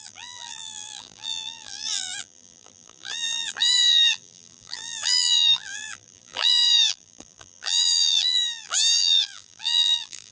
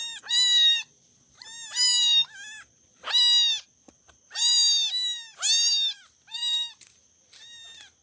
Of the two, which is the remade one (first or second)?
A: first